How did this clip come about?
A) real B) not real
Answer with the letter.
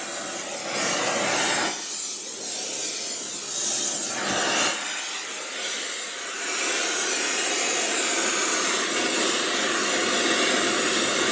A